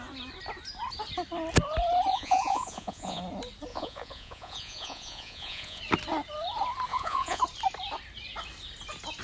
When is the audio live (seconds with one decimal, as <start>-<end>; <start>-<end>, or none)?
0.0-2.1; 3.2-3.7; 5.8-6.9; 7.4-9.2